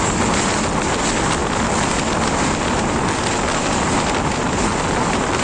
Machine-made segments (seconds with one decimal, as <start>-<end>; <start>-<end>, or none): none